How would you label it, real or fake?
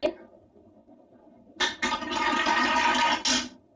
real